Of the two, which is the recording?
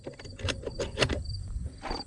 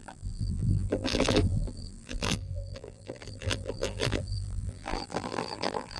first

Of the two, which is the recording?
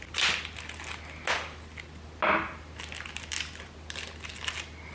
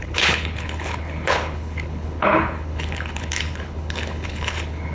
first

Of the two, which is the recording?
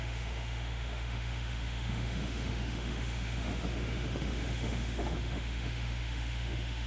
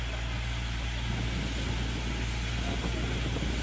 second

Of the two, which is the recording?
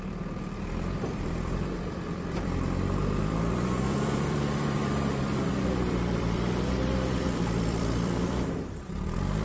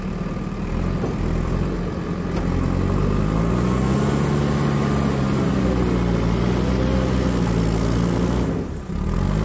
second